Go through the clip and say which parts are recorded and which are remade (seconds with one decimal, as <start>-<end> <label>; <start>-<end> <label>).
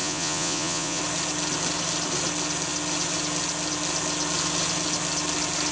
0.0-1.0 remade; 1.0-5.7 recorded